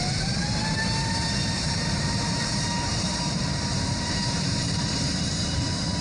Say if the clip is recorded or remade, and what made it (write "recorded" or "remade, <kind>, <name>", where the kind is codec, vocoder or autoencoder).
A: remade, vocoder, BigVGAN v2